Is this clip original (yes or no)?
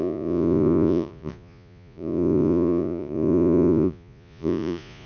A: no